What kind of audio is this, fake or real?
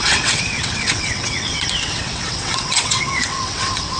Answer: fake